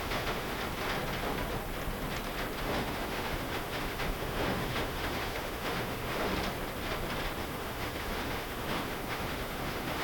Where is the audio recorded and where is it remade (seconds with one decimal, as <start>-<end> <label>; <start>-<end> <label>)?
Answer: 0.0-0.6 remade; 0.6-2.6 recorded; 2.6-6.3 remade; 6.3-7.4 recorded; 7.4-10.0 remade